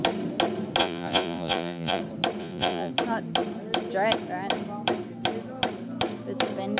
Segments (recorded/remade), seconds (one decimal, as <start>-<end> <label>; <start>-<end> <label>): 0.0-0.8 recorded; 0.8-2.0 remade; 2.0-2.4 recorded; 2.4-2.9 remade; 2.9-6.8 recorded